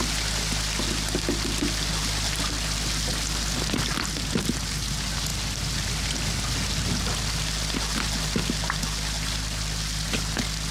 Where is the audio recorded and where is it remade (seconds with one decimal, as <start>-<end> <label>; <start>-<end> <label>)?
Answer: 0.0-10.7 recorded